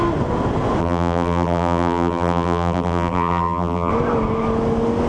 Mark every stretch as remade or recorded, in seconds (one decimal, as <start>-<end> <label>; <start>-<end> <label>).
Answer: 0.0-0.8 recorded; 0.8-3.9 remade; 3.9-5.1 recorded